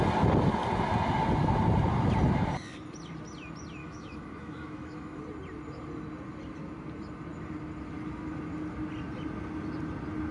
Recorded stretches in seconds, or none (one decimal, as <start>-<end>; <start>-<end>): 0.0-3.8; 5.2-10.3

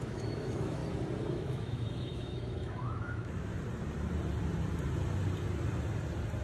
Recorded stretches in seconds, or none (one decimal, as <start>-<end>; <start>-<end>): 0.8-1.3; 3.5-6.4

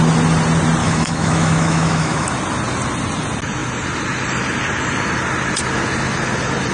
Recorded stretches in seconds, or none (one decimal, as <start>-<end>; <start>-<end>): 0.0-0.8; 2.3-6.7

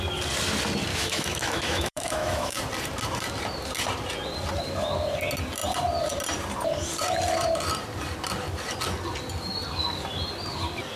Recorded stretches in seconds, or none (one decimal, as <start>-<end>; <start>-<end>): 0.0-0.9; 2.6-11.0